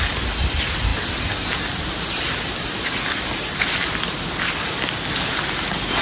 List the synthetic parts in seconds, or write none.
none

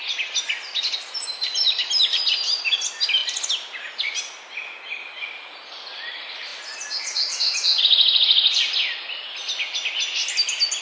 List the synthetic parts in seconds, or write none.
none

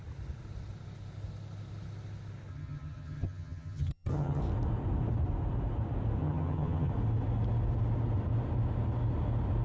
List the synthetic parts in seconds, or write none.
2.5-4.4; 6.2-6.9

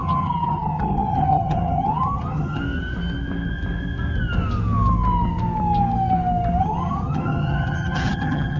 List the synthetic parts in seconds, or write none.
0.0-2.6; 6.6-8.6

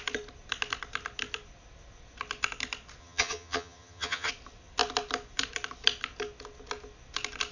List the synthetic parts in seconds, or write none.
3.0-4.3

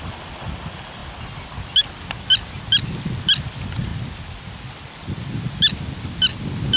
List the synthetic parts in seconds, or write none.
none